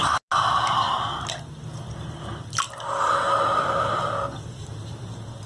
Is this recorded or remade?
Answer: recorded